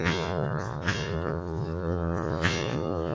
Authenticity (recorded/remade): remade